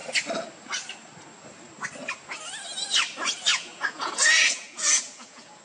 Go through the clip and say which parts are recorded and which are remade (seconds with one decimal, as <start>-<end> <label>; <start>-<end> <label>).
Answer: 0.0-3.5 recorded; 3.5-5.6 remade